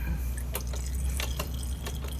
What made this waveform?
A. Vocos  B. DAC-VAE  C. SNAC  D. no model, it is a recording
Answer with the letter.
D